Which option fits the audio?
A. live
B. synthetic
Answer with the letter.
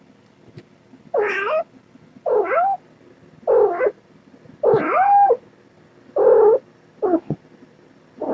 A